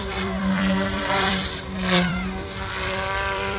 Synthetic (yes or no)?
yes